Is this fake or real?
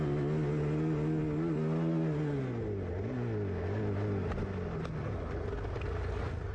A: real